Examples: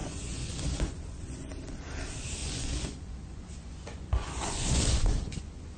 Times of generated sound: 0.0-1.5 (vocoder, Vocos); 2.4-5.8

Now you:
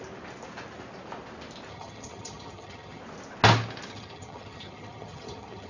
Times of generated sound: 1.7-3.0 (vocoder, HiFi-GAN); 3.9-5.7

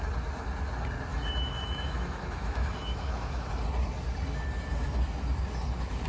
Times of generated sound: 1.1-3.5 (autoencoder, DAC-VAE)

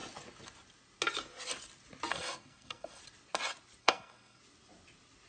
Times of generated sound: 2.1-3.0 (codec, SNAC); 3.8-4.4

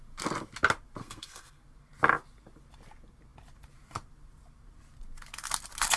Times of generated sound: 1.0-1.6 (codec, SNAC)

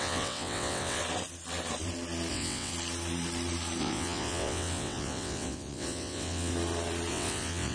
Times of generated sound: 0.0-1.0 (vocoder, WaveNeXt); 2.3-2.7; 3.8-6.5; 7.1-7.7

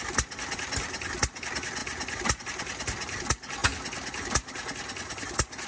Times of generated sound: none